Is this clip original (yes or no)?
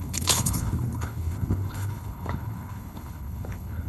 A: no